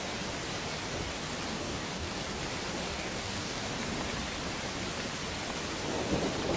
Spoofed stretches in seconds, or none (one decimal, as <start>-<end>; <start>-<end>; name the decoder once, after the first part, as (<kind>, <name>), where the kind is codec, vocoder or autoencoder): 1.5-2.2 (codec, DAC); 2.9-3.7